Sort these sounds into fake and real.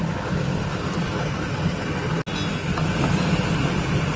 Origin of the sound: real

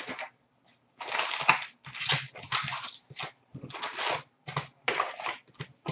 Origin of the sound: real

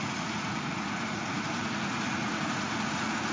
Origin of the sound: fake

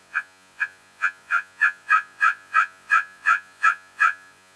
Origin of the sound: fake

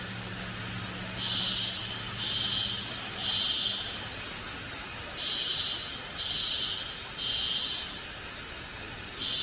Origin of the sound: real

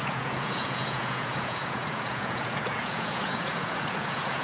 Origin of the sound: fake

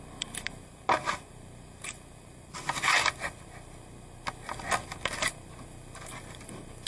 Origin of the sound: real